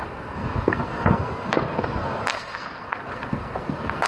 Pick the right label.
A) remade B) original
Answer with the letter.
A